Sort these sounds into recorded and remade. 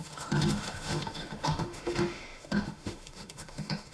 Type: remade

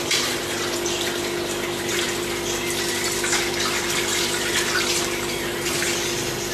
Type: recorded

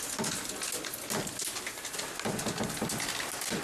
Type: recorded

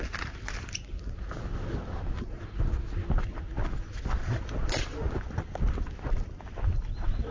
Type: recorded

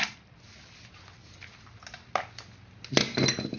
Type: recorded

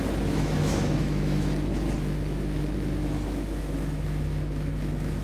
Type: remade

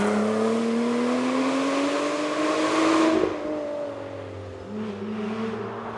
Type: recorded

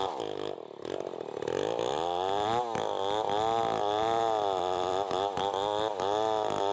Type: recorded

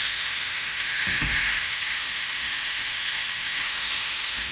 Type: remade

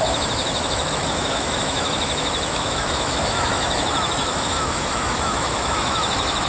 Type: remade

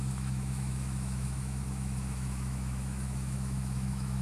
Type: remade